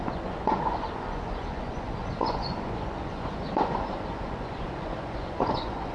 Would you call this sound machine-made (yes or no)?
yes